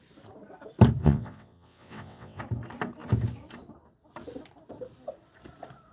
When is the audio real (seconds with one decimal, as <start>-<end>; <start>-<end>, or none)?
0.0-1.0; 2.4-5.9